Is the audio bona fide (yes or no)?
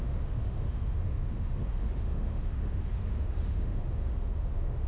no